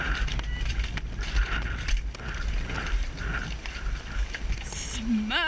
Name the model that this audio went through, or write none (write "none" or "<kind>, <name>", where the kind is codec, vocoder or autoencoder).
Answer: none